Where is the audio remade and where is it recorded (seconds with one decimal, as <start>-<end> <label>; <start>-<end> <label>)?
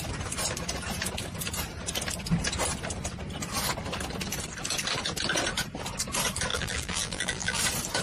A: 0.0-6.5 recorded; 6.5-7.6 remade; 7.6-8.0 recorded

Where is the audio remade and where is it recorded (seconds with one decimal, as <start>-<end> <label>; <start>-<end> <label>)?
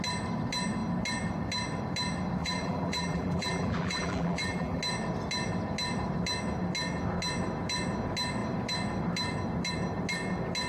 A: 0.0-2.4 recorded; 2.4-4.8 remade; 4.8-10.7 recorded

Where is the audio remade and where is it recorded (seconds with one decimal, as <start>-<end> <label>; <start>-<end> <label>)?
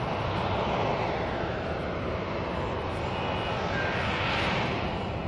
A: 0.0-0.9 recorded; 0.9-3.1 remade; 3.1-5.3 recorded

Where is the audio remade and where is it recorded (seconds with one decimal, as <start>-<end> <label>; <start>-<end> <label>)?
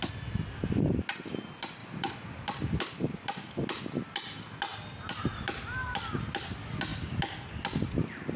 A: 0.0-1.8 recorded; 1.8-2.8 remade; 2.8-4.7 recorded; 4.7-6.1 remade; 6.1-8.4 recorded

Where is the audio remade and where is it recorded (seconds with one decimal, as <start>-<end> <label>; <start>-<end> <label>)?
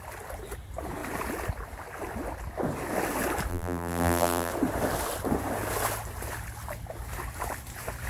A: 0.0-3.5 recorded; 3.5-4.5 remade; 4.5-8.1 recorded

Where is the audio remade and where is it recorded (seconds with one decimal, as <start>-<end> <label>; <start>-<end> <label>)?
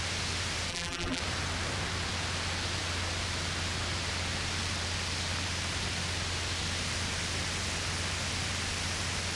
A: 0.0-0.7 recorded; 0.7-1.2 remade; 1.2-9.4 recorded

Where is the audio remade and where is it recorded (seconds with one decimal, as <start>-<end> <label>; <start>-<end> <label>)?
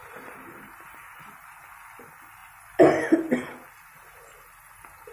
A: 0.0-0.6 remade; 0.6-5.1 recorded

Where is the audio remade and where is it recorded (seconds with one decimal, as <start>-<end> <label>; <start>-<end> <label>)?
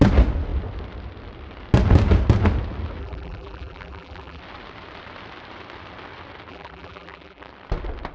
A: 0.0-3.0 recorded; 3.0-4.4 remade; 4.4-6.5 recorded; 6.5-7.5 remade; 7.5-8.1 recorded